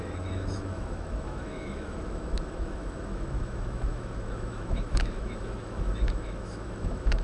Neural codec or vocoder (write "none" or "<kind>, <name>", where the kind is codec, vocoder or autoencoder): autoencoder, DAC-VAE